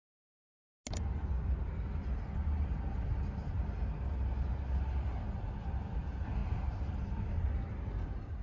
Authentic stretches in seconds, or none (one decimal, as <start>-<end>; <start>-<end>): 0.0-8.4